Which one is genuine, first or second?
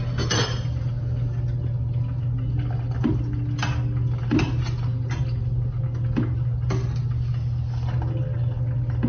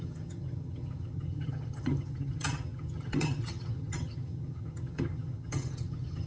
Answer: first